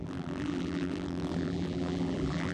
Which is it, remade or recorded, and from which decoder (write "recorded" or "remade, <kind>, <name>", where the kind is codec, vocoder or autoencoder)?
remade, vocoder, BigVGAN v2